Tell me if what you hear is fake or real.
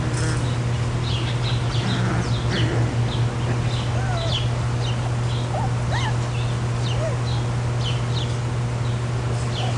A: real